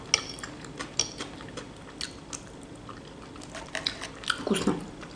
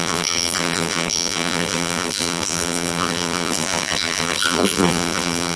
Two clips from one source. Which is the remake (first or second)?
second